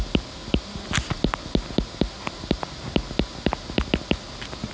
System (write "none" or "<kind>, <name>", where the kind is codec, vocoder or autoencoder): none